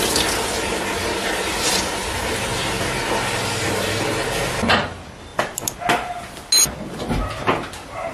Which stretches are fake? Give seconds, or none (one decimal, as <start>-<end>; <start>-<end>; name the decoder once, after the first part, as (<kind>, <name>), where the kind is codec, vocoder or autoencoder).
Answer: none